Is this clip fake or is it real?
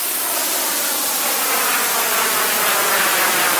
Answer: real